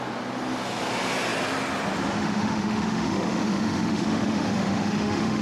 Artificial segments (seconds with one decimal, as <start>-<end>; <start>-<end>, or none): 2.2-5.4